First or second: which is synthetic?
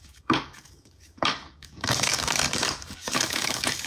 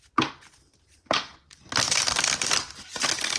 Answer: first